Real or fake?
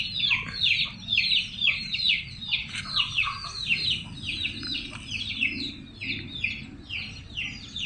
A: real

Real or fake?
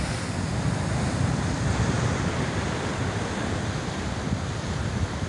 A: real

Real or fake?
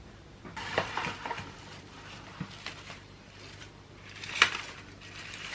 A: fake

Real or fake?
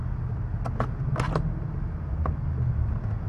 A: real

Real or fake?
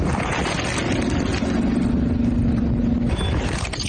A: real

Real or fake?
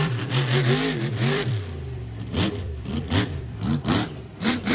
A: fake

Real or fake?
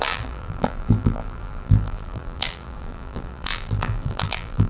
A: fake